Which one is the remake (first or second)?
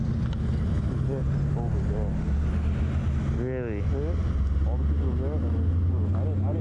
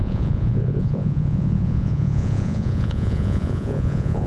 second